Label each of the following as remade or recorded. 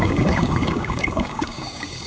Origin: remade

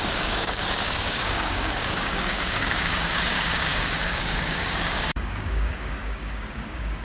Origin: remade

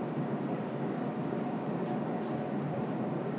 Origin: remade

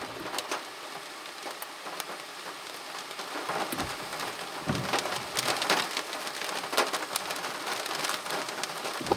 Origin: recorded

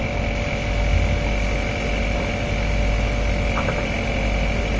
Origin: recorded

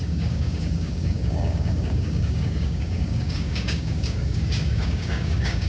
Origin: remade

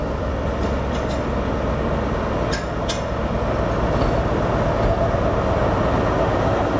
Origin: recorded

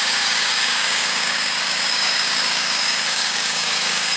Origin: remade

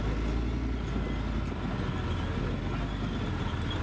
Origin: recorded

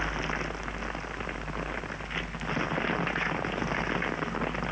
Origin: recorded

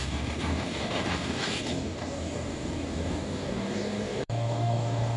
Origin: remade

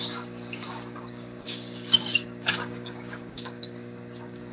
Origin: remade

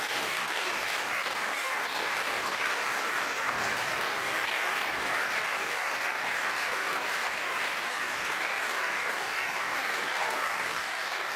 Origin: remade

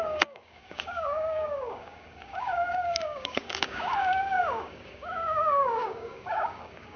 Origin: remade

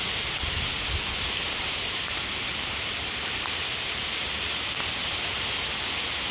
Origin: recorded